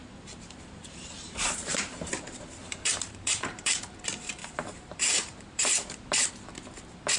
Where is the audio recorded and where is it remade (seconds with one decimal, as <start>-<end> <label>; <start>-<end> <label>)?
0.0-3.8 remade; 3.8-4.4 recorded; 4.4-6.3 remade; 6.3-7.2 recorded